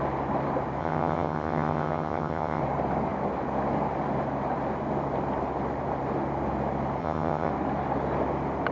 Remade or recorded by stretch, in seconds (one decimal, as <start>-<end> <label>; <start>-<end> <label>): 0.0-0.8 recorded; 0.8-2.6 remade; 2.6-7.0 recorded; 7.0-7.5 remade; 7.5-8.7 recorded